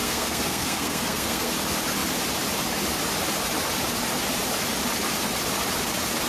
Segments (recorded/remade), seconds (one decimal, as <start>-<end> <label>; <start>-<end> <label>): 0.0-1.5 remade; 1.5-6.3 recorded